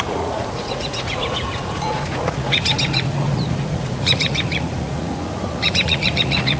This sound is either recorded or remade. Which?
remade